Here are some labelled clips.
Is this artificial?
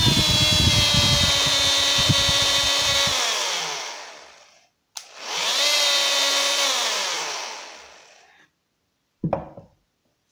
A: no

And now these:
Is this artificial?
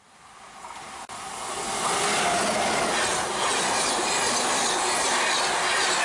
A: no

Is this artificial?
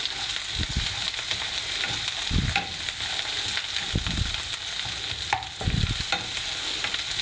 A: no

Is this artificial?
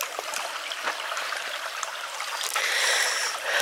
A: no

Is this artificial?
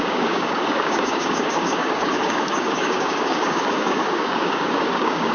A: yes